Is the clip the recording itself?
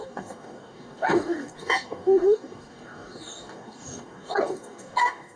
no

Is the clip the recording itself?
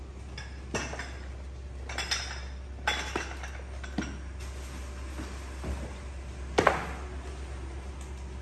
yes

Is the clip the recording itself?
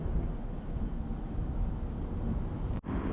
yes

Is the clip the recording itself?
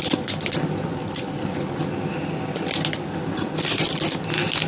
yes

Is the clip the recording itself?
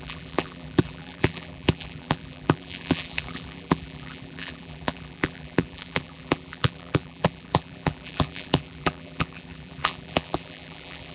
no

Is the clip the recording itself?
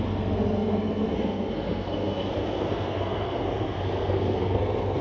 no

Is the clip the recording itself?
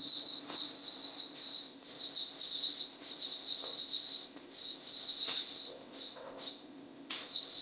no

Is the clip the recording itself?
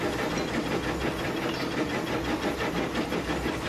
yes